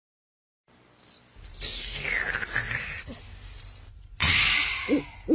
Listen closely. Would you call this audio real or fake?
real